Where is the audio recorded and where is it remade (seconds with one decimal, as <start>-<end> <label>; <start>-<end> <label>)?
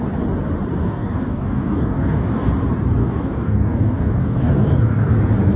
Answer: 0.0-0.8 recorded; 0.8-2.5 remade; 2.5-3.0 recorded; 3.0-5.1 remade; 5.1-5.6 recorded